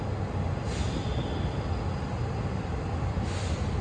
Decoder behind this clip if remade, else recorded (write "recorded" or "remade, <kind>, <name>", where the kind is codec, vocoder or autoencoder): recorded